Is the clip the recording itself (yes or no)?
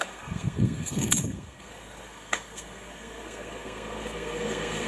no